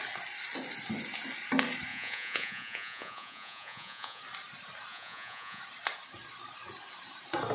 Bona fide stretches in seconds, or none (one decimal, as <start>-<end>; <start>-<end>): 0.0-1.9; 4.2-4.9; 5.6-7.5